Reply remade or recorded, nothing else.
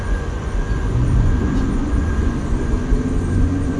remade